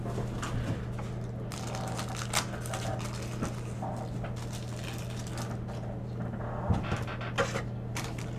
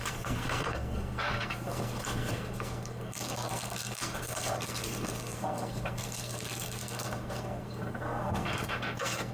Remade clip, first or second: second